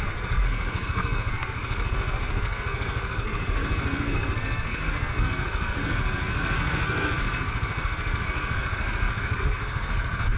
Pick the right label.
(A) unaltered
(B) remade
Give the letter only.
B